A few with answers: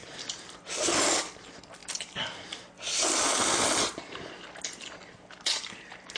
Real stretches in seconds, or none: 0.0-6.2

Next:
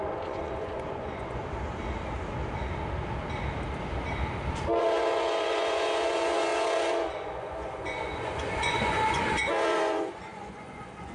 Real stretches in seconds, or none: 1.4-4.8

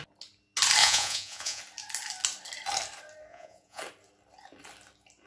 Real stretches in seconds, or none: 0.0-0.8; 1.6-3.3; 3.8-5.3

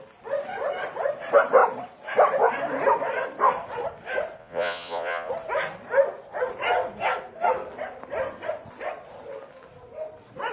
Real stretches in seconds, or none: 0.0-4.4; 5.3-10.5

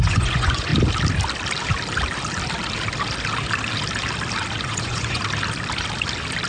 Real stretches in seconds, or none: 0.7-4.6; 5.2-6.5

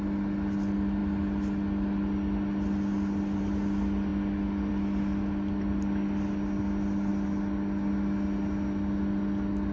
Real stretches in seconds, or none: 0.0-9.7

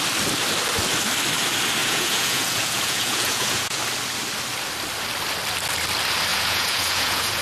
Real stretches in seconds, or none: 0.0-1.8; 3.8-6.3